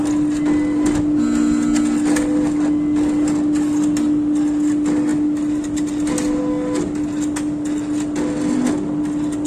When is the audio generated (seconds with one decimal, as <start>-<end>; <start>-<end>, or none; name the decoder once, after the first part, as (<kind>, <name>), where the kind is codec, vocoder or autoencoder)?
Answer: none

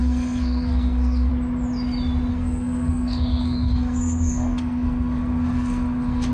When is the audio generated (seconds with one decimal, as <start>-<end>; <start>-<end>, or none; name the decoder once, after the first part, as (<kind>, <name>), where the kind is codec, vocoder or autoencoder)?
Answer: 0.0-1.3 (codec, SNAC); 2.3-6.3

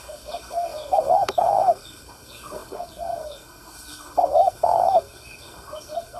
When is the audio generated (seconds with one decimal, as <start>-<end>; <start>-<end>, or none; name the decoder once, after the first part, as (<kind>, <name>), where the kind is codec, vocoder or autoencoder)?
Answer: 0.0-6.2 (codec, SNAC)